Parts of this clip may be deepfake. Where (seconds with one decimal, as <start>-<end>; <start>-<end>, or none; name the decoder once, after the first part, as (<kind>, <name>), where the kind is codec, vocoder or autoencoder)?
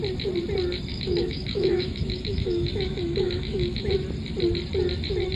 0.9-3.9 (autoencoder, DAC-VAE)